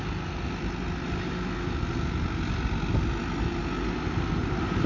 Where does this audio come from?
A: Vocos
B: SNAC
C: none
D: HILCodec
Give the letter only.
C